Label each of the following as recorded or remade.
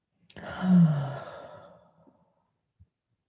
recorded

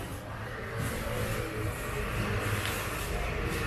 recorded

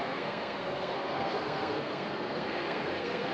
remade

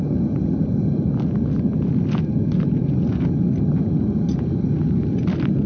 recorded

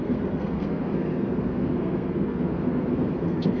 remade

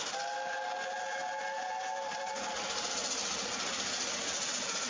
recorded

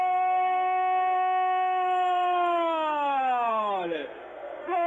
remade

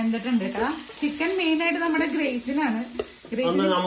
recorded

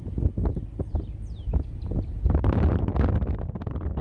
recorded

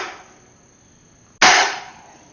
recorded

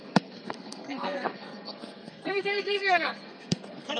remade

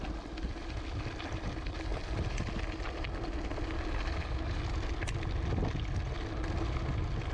recorded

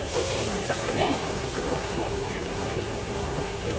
remade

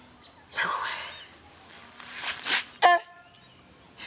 recorded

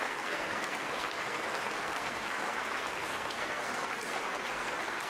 remade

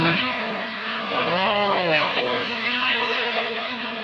remade